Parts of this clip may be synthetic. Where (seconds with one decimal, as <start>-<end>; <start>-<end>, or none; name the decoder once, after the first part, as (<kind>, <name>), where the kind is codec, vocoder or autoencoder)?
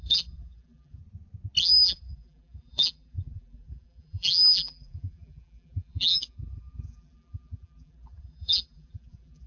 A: 0.0-1.0 (vocoder, BigVGAN v2); 1.6-9.5